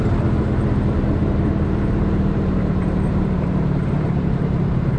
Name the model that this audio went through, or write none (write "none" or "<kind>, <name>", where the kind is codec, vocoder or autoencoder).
vocoder, BigVGAN v2